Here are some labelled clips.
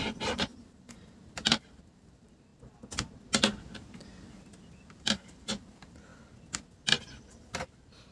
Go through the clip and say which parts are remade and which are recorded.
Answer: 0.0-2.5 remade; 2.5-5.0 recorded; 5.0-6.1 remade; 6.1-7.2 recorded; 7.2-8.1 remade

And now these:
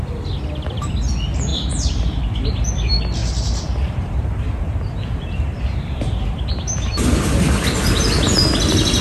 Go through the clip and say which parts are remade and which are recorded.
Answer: 0.0-1.5 recorded; 1.5-2.2 remade; 2.2-3.2 recorded; 3.2-7.6 remade; 7.6-9.0 recorded

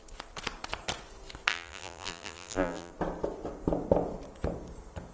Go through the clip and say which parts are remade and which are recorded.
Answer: 0.0-1.5 recorded; 1.5-2.9 remade; 2.9-5.1 recorded

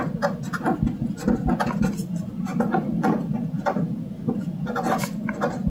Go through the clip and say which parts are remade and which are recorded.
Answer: 0.0-5.7 recorded

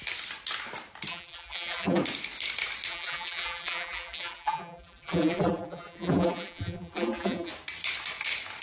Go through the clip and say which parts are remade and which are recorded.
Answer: 0.0-1.1 recorded; 1.1-2.0 remade; 2.0-2.9 recorded; 2.9-7.5 remade; 7.5-8.6 recorded

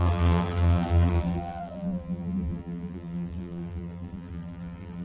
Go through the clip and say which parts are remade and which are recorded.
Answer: 0.0-5.0 remade

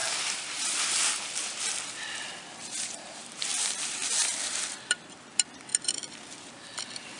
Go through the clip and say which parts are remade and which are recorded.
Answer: 0.0-7.2 remade